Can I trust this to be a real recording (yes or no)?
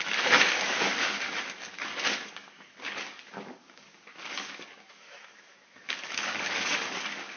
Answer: no